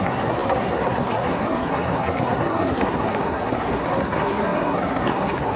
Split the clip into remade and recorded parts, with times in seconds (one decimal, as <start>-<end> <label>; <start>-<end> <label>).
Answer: 0.0-5.6 remade